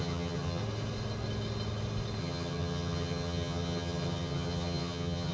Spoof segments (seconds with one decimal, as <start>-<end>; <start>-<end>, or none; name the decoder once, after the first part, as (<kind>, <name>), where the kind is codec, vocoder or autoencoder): 0.0-0.6 (vocoder, HiFi-GAN); 2.2-5.3